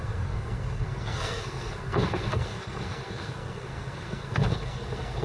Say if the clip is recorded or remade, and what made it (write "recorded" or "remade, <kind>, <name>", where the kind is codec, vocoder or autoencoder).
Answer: remade, codec, SNAC